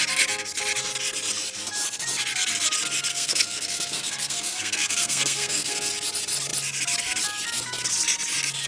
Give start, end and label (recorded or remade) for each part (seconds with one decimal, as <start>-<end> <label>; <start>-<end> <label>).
0.0-3.1 recorded; 3.1-5.9 remade; 5.9-8.7 recorded